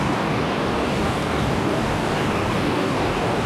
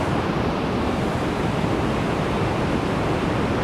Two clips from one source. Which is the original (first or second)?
second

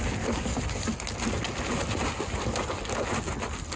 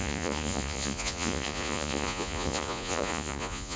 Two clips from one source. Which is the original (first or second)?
first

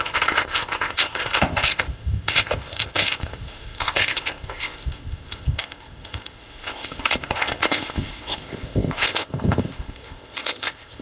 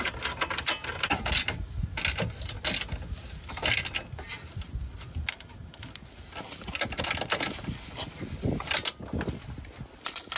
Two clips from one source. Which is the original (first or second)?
second